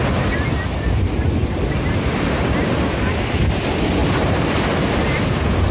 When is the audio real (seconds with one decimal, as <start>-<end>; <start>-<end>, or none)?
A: 0.0-5.7